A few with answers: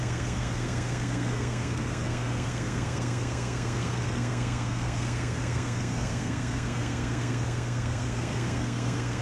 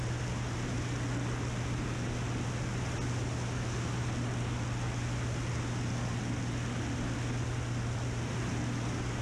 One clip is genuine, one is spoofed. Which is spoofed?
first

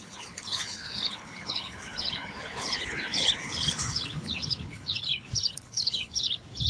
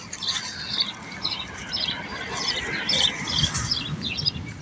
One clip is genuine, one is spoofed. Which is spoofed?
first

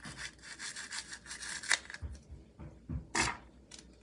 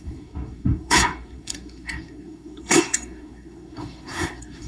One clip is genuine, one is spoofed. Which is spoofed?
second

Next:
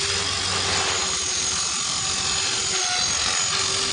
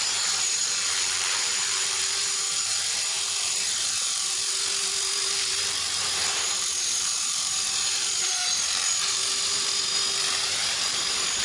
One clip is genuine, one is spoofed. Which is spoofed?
second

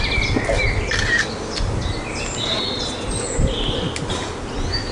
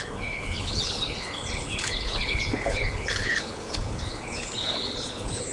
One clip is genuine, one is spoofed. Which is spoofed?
second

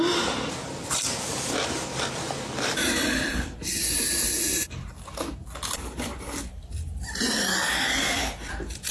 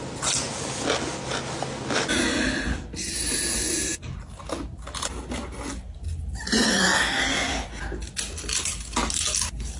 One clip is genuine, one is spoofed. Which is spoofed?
first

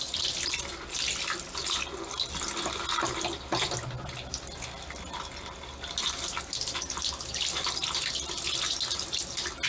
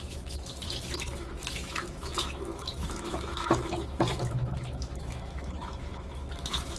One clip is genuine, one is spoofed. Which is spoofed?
second